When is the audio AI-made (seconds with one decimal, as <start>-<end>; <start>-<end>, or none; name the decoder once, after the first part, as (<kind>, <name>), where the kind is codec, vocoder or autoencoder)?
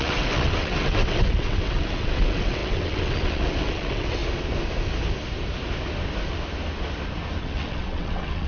0.0-4.2 (vocoder, WaveNeXt); 7.4-8.5